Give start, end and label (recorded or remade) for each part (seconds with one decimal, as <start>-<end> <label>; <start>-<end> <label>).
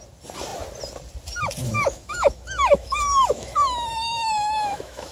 0.0-1.6 recorded; 1.6-5.1 remade